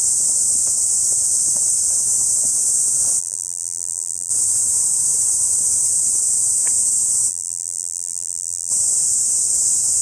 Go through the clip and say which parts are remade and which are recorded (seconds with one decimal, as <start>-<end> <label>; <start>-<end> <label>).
0.0-3.2 recorded; 3.2-4.3 remade; 4.3-7.3 recorded; 7.3-8.7 remade; 8.7-10.0 recorded